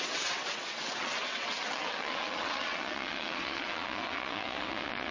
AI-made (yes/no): yes